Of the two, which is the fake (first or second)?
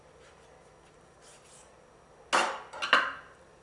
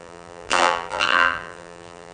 second